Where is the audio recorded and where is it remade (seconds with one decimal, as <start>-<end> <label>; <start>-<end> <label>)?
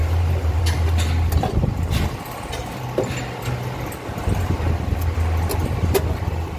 0.0-0.6 remade; 0.6-6.6 recorded